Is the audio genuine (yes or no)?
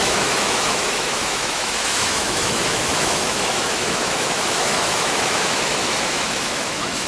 no